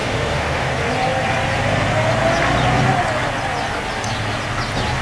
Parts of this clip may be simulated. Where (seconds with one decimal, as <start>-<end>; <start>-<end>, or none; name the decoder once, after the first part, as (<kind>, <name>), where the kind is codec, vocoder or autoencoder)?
0.0-0.7 (autoencoder, DAC-VAE)